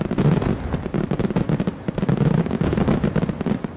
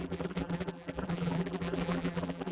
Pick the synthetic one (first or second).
second